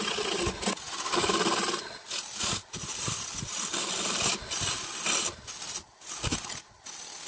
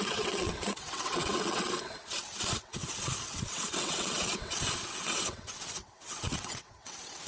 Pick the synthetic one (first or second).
second